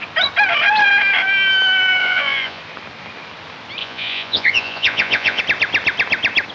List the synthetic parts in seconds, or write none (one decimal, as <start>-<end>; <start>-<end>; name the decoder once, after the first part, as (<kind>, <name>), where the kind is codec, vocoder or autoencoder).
2.0-2.6 (vocoder, Vocos); 3.8-5.4